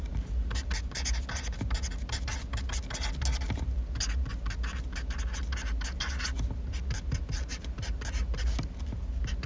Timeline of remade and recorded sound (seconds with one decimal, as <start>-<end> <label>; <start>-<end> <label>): 0.0-9.5 recorded